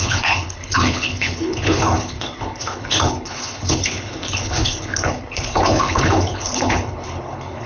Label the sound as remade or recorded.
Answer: remade